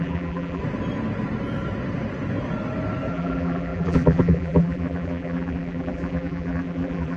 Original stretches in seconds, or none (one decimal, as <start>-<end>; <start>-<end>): 0.6-3.1